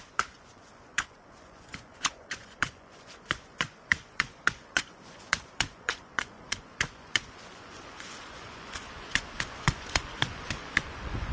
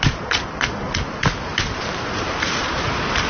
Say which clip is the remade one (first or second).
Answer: first